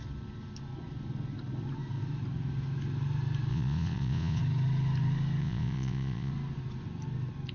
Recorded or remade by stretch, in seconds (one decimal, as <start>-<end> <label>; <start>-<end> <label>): 0.0-3.5 recorded; 3.5-4.4 remade; 4.4-5.4 recorded; 5.4-6.3 remade; 6.3-7.5 recorded